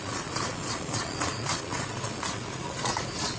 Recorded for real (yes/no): no